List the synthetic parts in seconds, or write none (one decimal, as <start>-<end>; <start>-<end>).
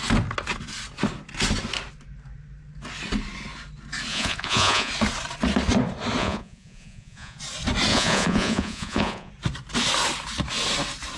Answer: 4.1-4.9; 6.2-7.4; 7.9-9.3